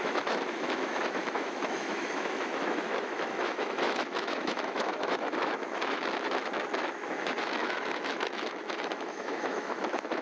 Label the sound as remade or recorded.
remade